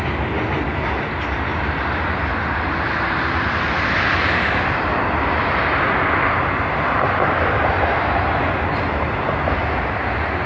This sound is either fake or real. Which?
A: real